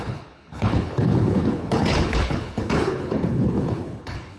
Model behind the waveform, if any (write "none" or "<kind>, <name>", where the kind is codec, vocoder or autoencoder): codec, HILCodec